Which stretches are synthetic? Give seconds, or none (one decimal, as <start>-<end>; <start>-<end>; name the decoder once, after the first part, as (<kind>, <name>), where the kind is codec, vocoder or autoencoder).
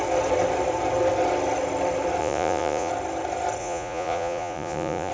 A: 2.2-2.9 (vocoder, Vocos); 3.6-5.1